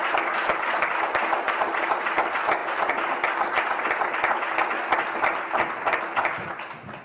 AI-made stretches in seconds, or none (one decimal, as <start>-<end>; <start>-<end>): none